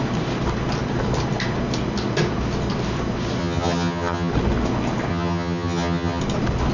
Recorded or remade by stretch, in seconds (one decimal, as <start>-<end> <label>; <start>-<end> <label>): 0.0-3.4 recorded; 3.4-4.3 remade; 4.3-5.1 recorded; 5.1-6.2 remade; 6.2-6.7 recorded

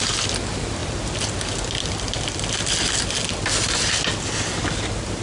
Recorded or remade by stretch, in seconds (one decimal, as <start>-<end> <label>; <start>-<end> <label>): 0.0-5.2 recorded

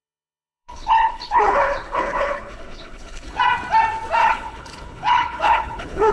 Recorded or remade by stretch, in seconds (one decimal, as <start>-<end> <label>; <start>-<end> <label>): 0.0-3.4 remade; 3.4-4.2 recorded; 4.2-6.1 remade

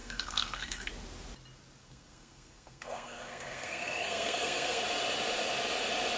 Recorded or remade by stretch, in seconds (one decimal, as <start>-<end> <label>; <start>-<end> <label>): 0.0-0.9 remade; 0.9-1.8 recorded; 1.8-4.8 remade; 4.8-6.2 recorded

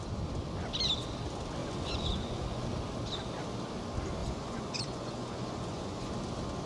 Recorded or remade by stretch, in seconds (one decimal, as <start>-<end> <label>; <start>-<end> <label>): 0.0-1.6 recorded; 1.6-2.6 remade; 2.6-4.2 recorded; 4.2-6.1 remade; 6.1-6.7 recorded

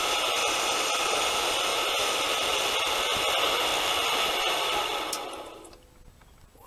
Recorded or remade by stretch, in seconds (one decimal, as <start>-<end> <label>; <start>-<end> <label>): 0.0-6.7 recorded

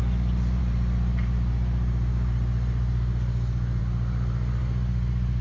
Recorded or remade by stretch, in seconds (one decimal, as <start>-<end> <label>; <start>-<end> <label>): 0.0-5.4 recorded